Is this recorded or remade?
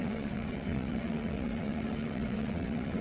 remade